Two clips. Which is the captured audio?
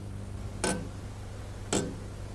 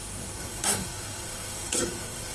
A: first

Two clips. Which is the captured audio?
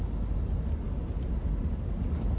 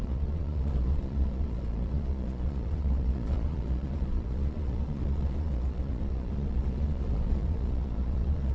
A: first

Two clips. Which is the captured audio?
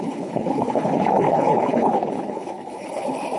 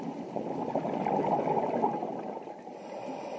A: second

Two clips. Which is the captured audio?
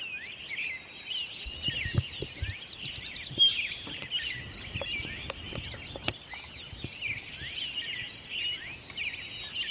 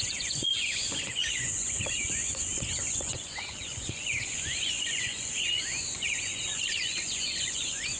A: first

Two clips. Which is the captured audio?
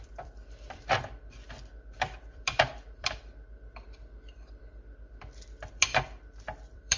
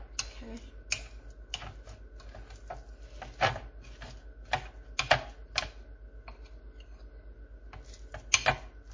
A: second